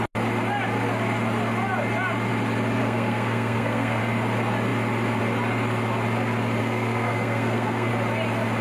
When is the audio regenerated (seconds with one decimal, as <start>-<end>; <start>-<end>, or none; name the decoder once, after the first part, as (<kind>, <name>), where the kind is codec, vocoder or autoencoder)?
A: 2.8-4.0 (codec, SNAC); 6.6-7.9